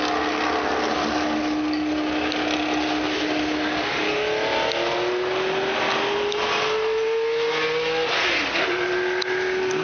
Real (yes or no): yes